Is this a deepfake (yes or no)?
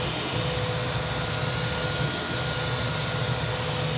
no